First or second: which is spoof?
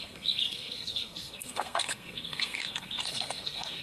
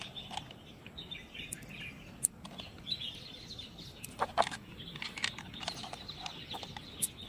first